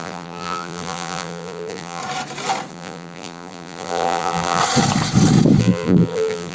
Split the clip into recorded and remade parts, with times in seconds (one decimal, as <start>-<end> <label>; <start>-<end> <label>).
0.0-2.0 remade; 2.0-2.7 recorded; 2.7-4.6 remade; 4.6-5.6 recorded; 5.6-6.5 remade